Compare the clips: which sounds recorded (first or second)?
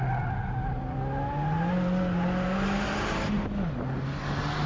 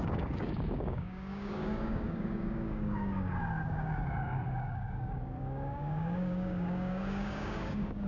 first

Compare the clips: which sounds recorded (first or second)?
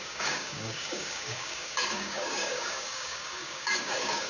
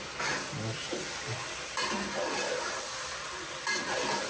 second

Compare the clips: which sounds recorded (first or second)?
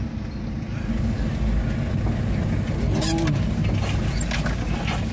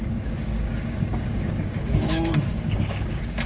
first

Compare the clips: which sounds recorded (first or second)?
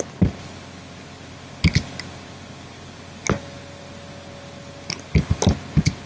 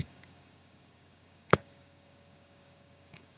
first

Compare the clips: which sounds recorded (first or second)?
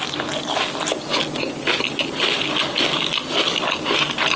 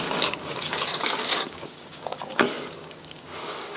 first